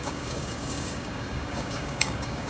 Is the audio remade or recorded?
remade